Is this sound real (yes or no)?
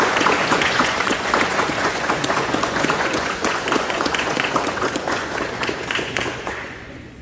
no